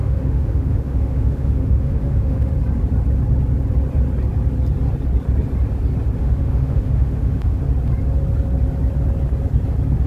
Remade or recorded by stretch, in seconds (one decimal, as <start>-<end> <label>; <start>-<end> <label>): 0.0-2.5 remade; 2.5-6.2 recorded; 6.2-7.6 remade; 7.6-10.1 recorded

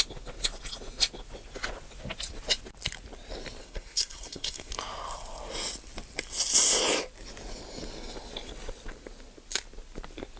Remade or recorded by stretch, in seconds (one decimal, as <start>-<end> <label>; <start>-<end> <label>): 0.0-3.6 recorded; 3.6-4.7 remade; 4.7-10.4 recorded

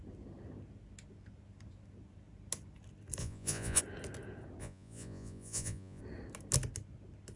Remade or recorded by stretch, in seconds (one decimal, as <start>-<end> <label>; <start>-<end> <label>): 0.0-3.2 recorded; 3.2-3.8 remade; 3.8-4.6 recorded; 4.6-6.0 remade; 6.0-7.4 recorded

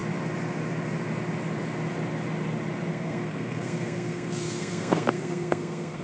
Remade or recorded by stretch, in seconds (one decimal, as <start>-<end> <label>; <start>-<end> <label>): 0.0-2.9 recorded; 2.9-6.0 remade